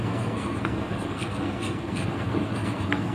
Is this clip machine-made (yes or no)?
yes